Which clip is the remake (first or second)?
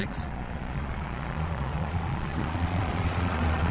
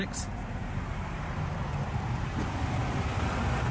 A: first